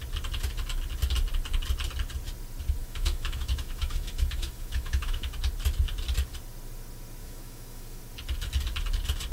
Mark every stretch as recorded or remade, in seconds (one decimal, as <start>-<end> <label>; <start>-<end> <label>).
0.0-2.8 recorded; 2.8-5.3 remade; 5.3-7.2 recorded; 7.2-8.0 remade; 8.0-9.3 recorded